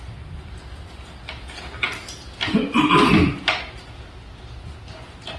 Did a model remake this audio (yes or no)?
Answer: no